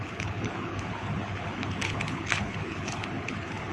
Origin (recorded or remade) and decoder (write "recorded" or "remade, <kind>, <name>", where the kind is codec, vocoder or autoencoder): remade, codec, HILCodec